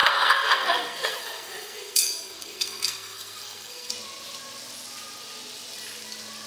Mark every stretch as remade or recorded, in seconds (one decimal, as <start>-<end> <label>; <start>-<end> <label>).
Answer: 0.0-3.9 remade; 3.9-6.5 recorded